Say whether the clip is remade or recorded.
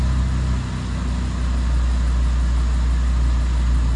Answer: recorded